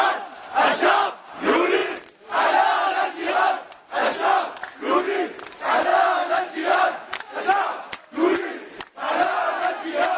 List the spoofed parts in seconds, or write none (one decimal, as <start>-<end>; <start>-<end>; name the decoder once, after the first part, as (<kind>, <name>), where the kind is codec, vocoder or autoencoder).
5.9-7.4 (autoencoder, DAC-VAE)